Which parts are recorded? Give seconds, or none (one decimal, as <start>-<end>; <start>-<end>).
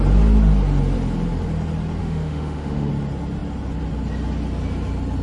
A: 0.0-2.0; 2.9-5.2